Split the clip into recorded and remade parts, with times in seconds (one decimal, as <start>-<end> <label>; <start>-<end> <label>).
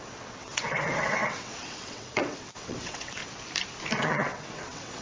0.0-3.2 remade; 3.2-4.0 recorded; 4.0-5.0 remade